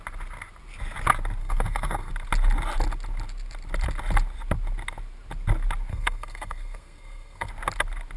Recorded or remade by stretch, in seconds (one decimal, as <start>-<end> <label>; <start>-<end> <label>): 0.0-1.4 recorded; 1.4-2.1 remade; 2.1-5.9 recorded; 5.9-7.5 remade; 7.5-8.2 recorded